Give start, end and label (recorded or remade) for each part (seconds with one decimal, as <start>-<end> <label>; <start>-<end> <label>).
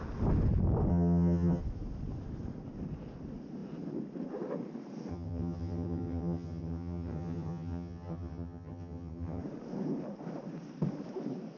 0.0-0.9 recorded; 0.9-1.6 remade; 1.6-5.1 recorded; 5.1-9.4 remade; 9.4-11.6 recorded